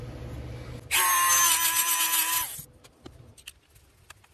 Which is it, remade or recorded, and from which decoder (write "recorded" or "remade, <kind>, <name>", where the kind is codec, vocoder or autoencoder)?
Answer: recorded